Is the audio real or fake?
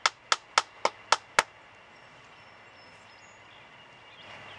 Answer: real